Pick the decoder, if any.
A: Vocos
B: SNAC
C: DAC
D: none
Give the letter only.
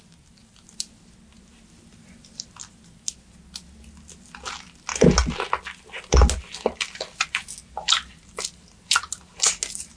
D